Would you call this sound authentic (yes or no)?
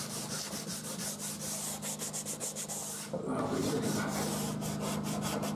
yes